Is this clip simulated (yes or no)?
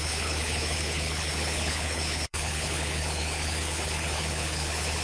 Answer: yes